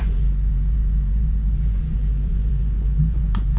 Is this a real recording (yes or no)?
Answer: no